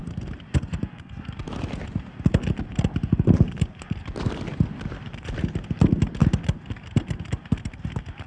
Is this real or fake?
real